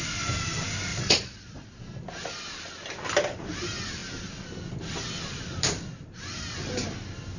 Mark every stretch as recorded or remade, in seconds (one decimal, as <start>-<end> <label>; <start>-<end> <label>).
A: 0.0-0.9 recorded; 0.9-1.8 remade; 1.8-7.4 recorded